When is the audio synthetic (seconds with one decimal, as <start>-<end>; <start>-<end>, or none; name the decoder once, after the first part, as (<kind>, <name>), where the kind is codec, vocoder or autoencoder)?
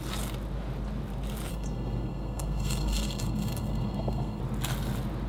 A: 1.5-4.4 (codec, SNAC)